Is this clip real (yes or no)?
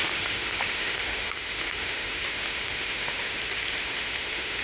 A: no